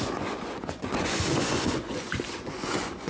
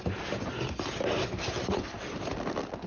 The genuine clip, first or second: second